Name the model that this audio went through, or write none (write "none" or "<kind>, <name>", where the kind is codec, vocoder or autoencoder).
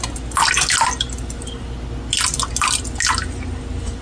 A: none